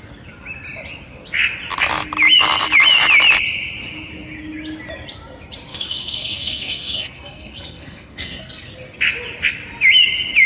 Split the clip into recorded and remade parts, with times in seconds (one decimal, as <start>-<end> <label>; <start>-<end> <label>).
0.0-5.7 recorded; 5.7-8.7 remade; 8.7-10.5 recorded